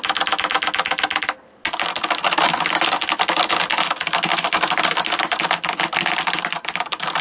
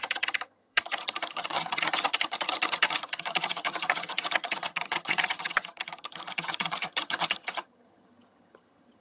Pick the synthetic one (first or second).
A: second